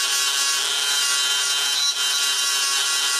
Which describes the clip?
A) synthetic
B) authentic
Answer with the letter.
B